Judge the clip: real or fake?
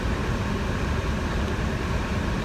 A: real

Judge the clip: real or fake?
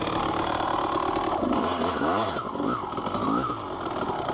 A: real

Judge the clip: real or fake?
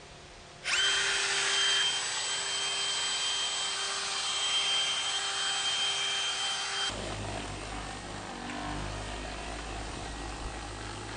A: real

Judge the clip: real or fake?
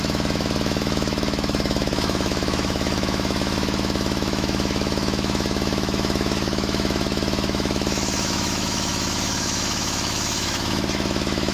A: fake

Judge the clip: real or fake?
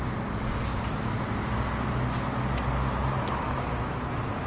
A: real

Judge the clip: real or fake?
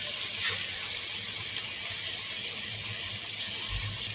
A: real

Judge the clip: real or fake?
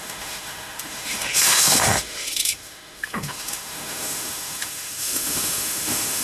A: fake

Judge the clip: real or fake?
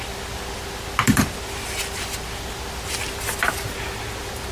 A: real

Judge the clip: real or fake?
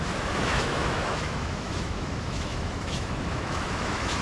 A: fake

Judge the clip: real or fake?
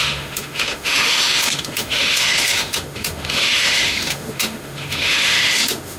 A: fake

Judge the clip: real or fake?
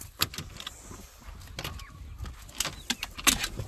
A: real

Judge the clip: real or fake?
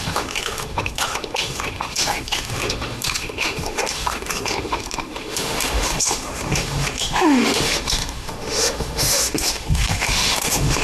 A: fake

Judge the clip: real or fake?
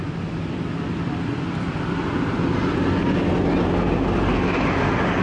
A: real